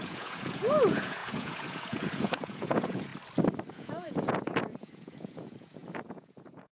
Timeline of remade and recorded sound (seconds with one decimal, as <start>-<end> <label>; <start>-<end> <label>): 0.0-3.1 remade; 3.1-3.7 recorded; 3.7-6.8 remade